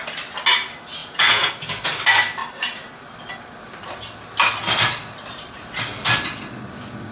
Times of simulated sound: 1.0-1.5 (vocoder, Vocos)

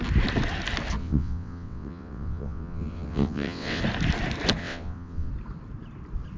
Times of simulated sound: 1.0-3.8 (vocoder, WaveNeXt); 4.6-5.3

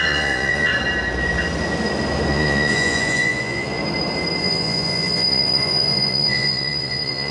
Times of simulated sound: 0.0-0.7 (vocoder, Vocos); 2.3-3.8; 4.4-7.3

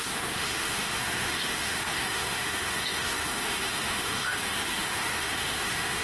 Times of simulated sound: 0.0-6.0 (autoencoder, DAC-VAE)

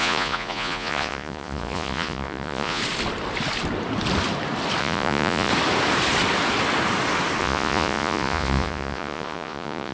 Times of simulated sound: 0.0-2.8 (vocoder, Vocos); 4.8-5.5; 7.4-9.9

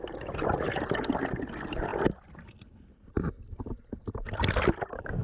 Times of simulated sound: none

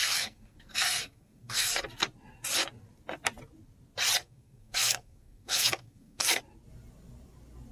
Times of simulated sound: 0.0-1.7 (codec, SNAC); 4.2-6.4

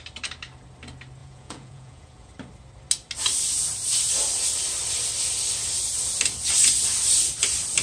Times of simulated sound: 1.2-2.3 (vocoder, Vocos)